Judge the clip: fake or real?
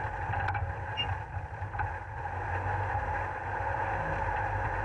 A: real